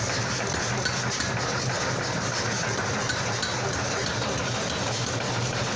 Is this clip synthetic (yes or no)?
no